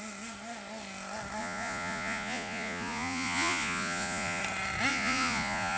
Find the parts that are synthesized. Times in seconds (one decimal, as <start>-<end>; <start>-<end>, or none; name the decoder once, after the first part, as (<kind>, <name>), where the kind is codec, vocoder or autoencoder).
1.4-4.4 (vocoder, Vocos); 4.9-5.8